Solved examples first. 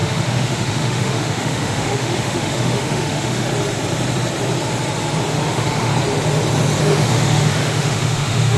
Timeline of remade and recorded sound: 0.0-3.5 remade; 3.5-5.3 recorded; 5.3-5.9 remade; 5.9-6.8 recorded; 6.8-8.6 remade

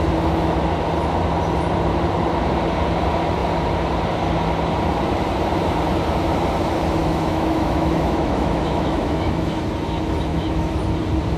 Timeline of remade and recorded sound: 0.0-7.0 recorded; 7.0-9.6 remade; 9.6-10.3 recorded; 10.3-10.8 remade; 10.8-11.4 recorded